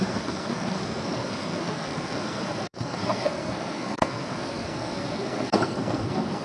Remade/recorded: remade